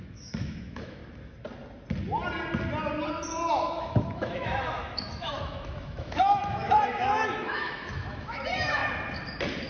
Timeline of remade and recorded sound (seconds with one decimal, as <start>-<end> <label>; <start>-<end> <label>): 0.0-1.0 remade; 1.0-3.5 recorded; 3.5-8.8 remade; 8.8-9.7 recorded